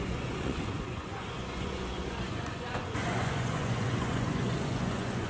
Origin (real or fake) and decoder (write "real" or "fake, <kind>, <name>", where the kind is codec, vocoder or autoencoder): fake, vocoder, Vocos